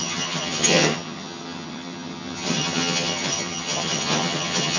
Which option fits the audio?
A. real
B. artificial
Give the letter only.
B